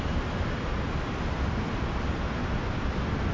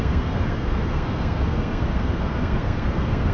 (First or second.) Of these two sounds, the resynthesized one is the second